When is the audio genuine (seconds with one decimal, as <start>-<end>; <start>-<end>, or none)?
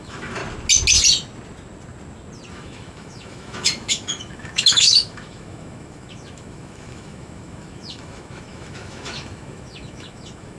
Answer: 0.4-2.5